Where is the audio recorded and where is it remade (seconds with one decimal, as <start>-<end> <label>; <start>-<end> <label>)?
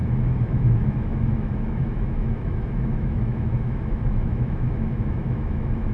0.0-5.9 remade